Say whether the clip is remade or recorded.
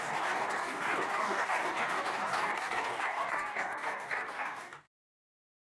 remade